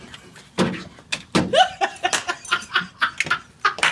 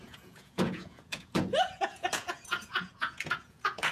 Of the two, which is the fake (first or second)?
second